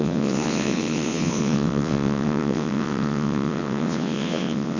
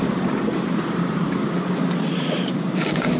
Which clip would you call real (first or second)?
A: second